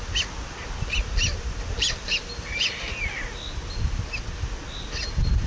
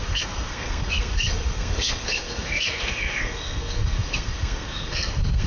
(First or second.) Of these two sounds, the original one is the first